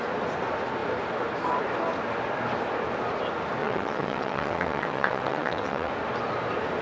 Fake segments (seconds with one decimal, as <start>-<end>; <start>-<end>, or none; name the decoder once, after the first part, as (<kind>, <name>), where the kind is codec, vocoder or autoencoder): 3.6-5.9 (vocoder, WaveNeXt)